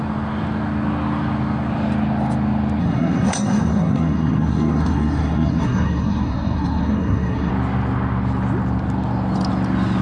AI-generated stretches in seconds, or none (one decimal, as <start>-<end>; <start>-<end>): 2.8-7.5

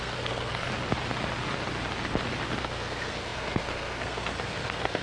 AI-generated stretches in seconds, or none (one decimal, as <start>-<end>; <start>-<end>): 0.0-0.7; 2.6-5.0